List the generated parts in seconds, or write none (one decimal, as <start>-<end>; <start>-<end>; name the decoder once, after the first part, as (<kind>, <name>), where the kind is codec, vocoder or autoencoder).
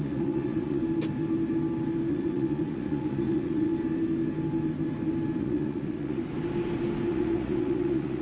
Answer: 0.0-0.8 (vocoder, Vocos); 2.1-3.7; 5.4-6.2; 7.1-8.2